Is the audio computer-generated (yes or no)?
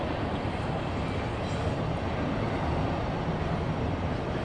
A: no